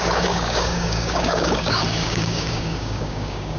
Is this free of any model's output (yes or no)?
no